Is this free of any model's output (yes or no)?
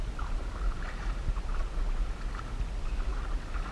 yes